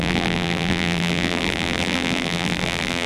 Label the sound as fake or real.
fake